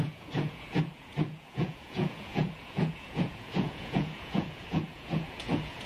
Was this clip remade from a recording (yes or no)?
yes